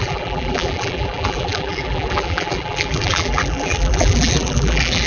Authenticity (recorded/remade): remade